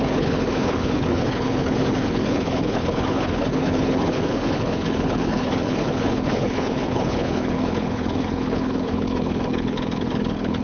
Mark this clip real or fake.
fake